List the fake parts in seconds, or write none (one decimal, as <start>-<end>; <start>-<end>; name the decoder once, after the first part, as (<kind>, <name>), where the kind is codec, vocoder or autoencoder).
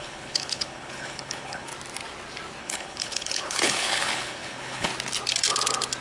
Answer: 0.0-1.7 (codec, HILCodec); 2.6-4.9